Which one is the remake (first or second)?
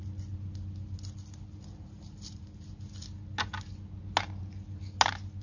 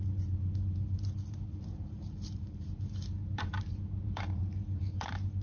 second